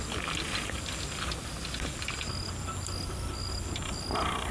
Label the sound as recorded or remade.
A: recorded